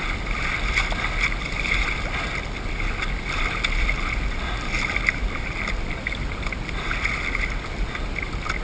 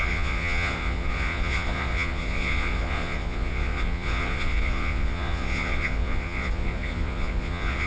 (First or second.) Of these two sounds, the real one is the first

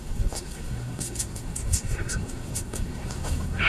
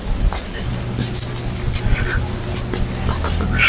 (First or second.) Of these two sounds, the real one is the second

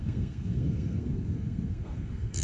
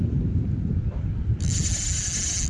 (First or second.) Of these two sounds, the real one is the second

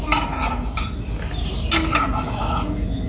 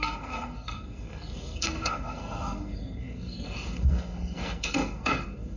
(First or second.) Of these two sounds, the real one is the first